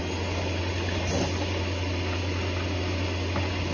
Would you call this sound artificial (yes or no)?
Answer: no